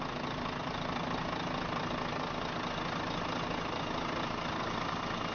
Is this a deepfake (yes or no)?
no